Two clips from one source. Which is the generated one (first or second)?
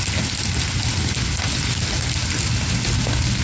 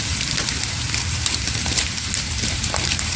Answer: second